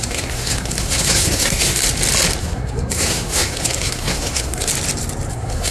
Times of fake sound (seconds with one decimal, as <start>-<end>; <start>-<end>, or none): 0.0-1.8; 2.4-4.7; 5.3-5.7

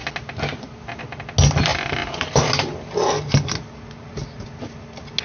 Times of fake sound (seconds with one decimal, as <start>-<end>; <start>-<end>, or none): none

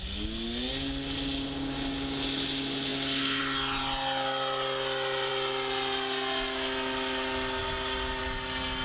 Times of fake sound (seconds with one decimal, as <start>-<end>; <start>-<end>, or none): none

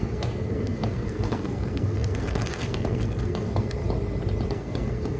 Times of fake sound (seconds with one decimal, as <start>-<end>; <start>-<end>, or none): 0.0-3.8; 4.5-5.2

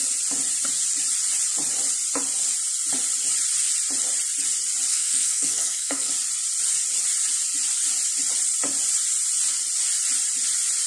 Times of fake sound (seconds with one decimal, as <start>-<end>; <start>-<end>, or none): 4.9-6.1

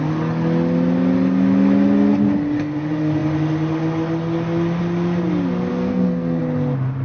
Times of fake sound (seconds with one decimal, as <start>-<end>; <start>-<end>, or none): 5.7-6.4

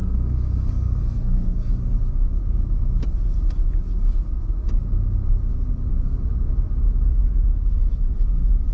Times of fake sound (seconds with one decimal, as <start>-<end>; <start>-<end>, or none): 0.0-1.7

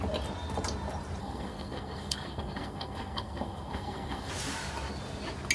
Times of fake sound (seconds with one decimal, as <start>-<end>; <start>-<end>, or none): 1.2-4.3